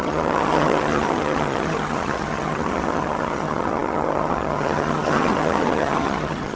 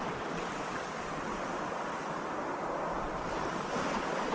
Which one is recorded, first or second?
second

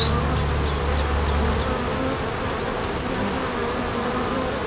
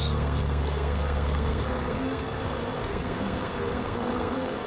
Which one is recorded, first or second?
first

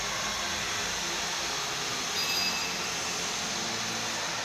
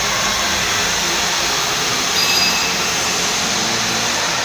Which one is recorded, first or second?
first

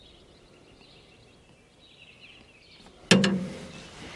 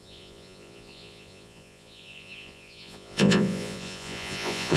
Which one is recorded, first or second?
first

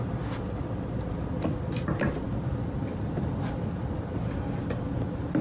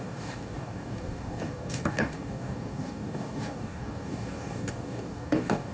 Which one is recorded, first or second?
first